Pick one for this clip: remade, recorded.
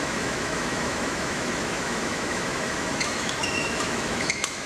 remade